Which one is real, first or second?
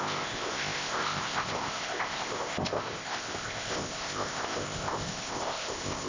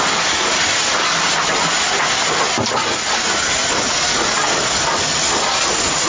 second